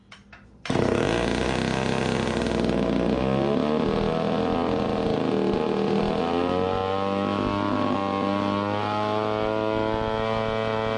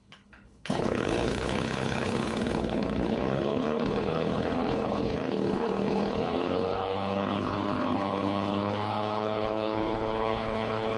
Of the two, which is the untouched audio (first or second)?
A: first